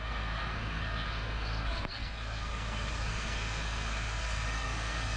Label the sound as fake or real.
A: fake